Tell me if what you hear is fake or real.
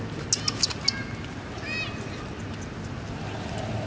real